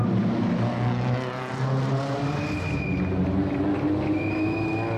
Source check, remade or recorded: recorded